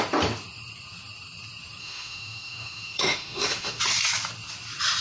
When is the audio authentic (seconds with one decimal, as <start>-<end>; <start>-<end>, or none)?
0.0-1.8; 3.8-5.0